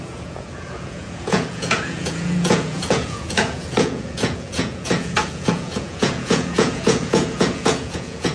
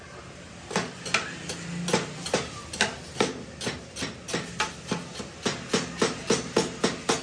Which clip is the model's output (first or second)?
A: first